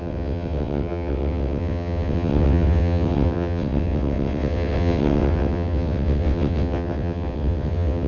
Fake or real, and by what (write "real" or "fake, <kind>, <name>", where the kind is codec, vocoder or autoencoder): fake, vocoder, WaveNeXt